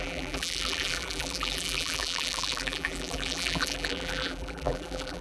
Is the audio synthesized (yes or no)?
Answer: yes